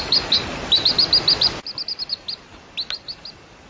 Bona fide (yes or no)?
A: yes